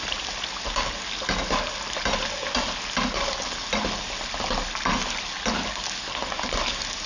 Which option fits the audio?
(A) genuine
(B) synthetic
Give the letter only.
A